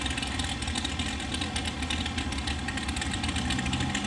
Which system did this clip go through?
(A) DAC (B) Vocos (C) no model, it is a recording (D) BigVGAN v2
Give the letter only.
C